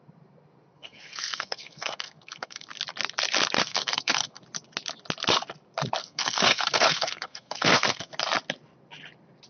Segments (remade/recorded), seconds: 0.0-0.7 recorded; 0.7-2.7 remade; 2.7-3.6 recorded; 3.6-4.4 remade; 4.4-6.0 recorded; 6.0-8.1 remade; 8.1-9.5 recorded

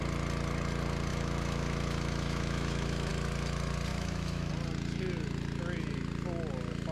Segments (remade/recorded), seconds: 0.0-1.1 recorded; 1.1-3.1 remade; 3.1-3.9 recorded; 3.9-4.5 remade; 4.5-6.9 recorded

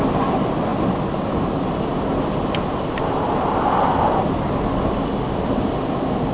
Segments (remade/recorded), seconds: 0.0-6.3 recorded

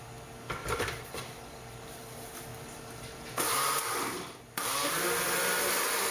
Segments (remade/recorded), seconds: 0.0-0.6 recorded; 0.6-1.4 remade; 1.4-6.1 recorded

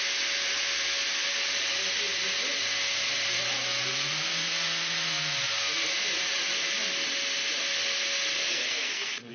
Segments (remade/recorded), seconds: 0.0-8.5 recorded; 8.5-9.3 remade

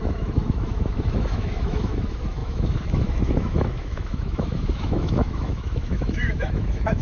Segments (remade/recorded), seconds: 0.0-7.0 remade